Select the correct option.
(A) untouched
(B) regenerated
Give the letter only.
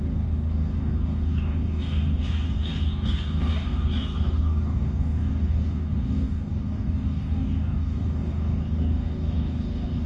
B